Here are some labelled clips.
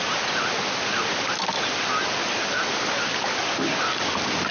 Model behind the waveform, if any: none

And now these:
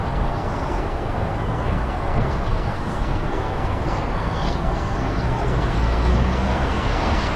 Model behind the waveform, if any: codec, SNAC